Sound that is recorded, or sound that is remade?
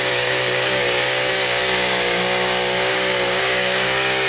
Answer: remade